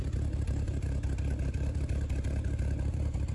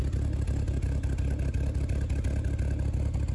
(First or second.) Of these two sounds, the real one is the second